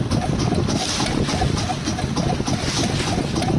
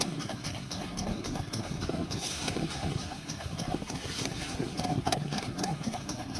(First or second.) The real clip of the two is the first